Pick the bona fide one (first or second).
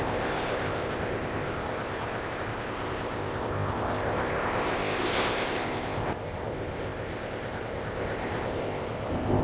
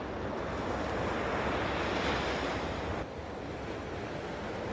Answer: second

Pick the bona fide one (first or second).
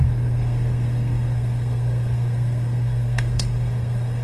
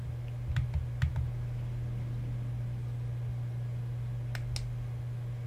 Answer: second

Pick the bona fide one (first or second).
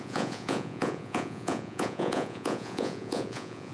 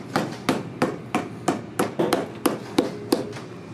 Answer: second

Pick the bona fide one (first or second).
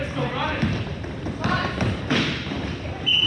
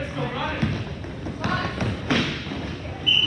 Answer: second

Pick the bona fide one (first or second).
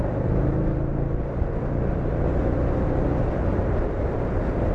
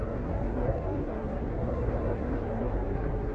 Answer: first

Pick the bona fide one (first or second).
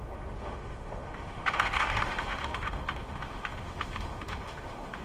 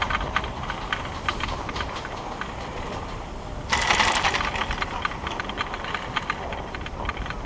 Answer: second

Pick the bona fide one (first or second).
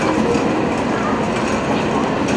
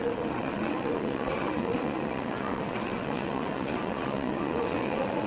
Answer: first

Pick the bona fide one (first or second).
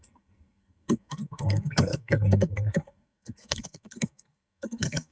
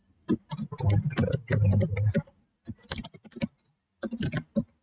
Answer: second